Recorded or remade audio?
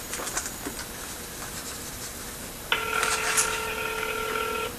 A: recorded